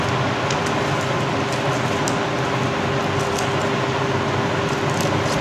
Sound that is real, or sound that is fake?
real